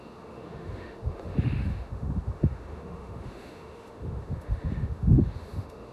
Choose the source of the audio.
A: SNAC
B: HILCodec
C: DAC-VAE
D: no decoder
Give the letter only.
C